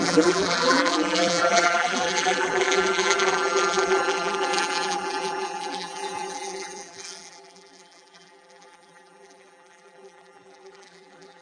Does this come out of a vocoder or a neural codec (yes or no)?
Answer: yes